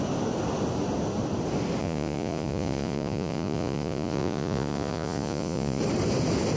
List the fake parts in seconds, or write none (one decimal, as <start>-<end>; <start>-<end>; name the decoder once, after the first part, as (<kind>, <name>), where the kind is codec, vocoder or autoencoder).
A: 1.8-5.8 (vocoder, Vocos)